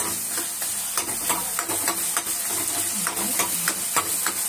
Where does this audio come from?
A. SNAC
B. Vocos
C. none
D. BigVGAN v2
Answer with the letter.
C